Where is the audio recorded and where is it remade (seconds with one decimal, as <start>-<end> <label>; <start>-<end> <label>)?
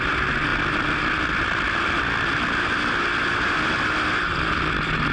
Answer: 0.0-5.1 recorded